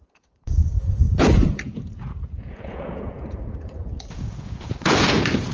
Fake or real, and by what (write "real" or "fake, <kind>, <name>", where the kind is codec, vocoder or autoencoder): fake, vocoder, Vocos